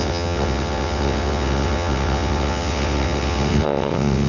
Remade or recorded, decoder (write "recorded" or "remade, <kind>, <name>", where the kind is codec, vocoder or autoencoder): remade, vocoder, WaveNeXt